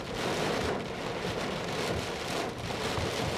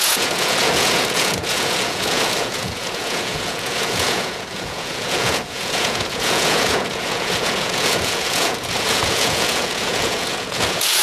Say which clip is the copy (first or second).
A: second